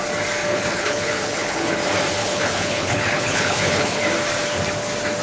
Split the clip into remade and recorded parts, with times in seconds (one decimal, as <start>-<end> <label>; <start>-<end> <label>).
0.0-0.5 recorded; 0.5-1.7 remade; 1.7-2.2 recorded; 2.2-4.0 remade; 4.0-5.2 recorded